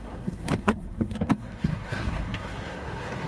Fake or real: fake